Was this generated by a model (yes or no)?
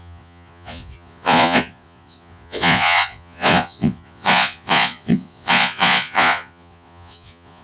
yes